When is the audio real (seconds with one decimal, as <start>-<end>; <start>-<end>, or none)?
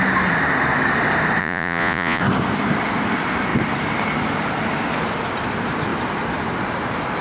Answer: 0.0-1.4; 2.2-7.2